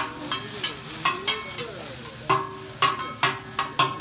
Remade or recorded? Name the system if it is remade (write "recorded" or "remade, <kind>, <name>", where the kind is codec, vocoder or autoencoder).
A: recorded